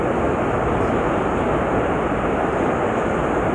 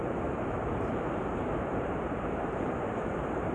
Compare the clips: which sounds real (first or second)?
first